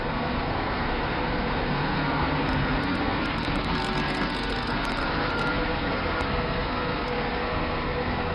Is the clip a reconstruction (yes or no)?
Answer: yes